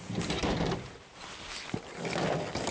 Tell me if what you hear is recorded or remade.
recorded